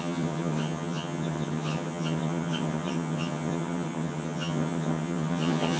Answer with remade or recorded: remade